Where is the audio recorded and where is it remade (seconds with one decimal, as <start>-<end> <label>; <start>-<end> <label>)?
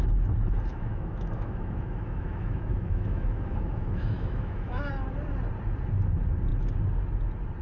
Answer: 0.0-0.7 recorded; 0.7-4.9 remade; 4.9-7.6 recorded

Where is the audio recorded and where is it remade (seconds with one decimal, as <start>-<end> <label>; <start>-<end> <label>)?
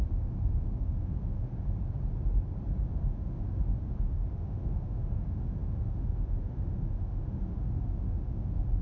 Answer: 0.0-1.5 remade; 1.5-2.9 recorded; 2.9-8.8 remade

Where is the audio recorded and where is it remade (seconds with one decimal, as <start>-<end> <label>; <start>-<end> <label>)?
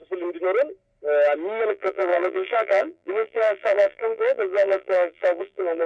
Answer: 0.0-1.7 recorded; 1.7-5.9 remade